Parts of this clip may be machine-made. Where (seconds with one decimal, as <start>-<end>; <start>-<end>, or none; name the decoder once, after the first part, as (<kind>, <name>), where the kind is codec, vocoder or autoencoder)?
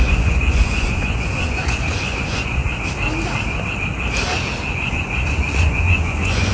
0.0-2.6 (vocoder, Vocos); 4.7-6.5